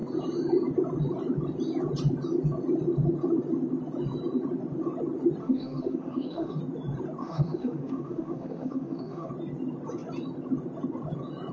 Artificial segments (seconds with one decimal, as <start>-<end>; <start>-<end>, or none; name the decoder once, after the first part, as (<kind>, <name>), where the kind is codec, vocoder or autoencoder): 5.4-6.6 (autoencoder, DAC-VAE); 7.2-9.3